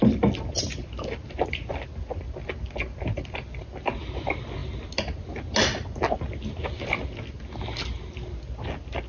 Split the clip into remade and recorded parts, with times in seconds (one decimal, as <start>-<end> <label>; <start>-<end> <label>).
0.0-9.1 recorded